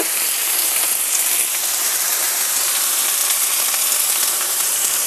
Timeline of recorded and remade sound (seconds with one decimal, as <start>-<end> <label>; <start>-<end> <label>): 0.0-0.7 remade; 0.7-1.5 recorded; 1.5-3.2 remade; 3.2-4.3 recorded; 4.3-5.1 remade